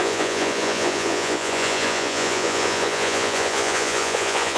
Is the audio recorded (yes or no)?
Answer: no